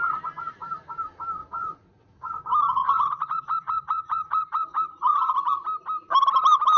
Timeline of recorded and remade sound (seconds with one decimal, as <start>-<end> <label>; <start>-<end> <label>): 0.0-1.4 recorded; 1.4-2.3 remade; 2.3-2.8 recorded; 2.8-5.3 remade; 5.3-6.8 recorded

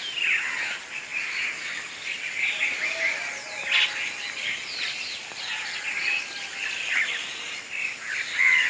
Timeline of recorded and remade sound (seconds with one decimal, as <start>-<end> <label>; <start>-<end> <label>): 0.0-8.7 recorded

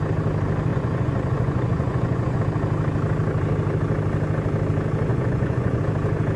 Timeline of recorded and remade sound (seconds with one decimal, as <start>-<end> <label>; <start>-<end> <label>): 0.0-0.7 recorded; 0.7-2.4 remade; 2.4-5.1 recorded; 5.1-5.8 remade; 5.8-6.4 recorded

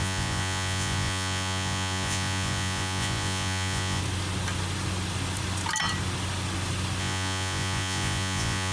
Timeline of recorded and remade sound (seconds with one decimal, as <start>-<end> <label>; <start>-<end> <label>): 0.0-4.0 remade; 4.0-7.0 recorded; 7.0-8.7 remade

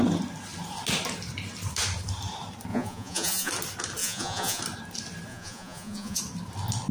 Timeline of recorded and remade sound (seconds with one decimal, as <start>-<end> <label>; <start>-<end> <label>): 0.0-2.7 recorded; 2.7-3.5 remade; 3.5-4.0 recorded; 4.0-4.6 remade; 4.6-5.3 recorded; 5.3-6.2 remade; 6.2-6.9 recorded

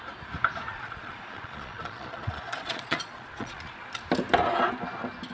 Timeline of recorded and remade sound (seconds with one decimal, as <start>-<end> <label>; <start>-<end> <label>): 0.0-0.7 recorded; 0.7-3.9 remade; 3.9-5.3 recorded